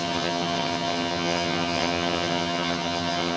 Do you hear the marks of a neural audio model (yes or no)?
yes